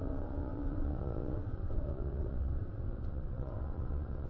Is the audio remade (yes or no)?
yes